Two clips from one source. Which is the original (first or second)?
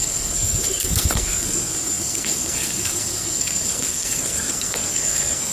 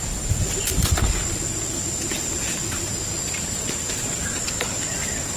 second